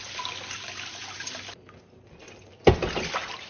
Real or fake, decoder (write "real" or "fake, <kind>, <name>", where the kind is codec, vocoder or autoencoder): real